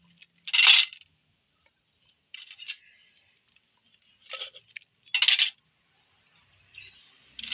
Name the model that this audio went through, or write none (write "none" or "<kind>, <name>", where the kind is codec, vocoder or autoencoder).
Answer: none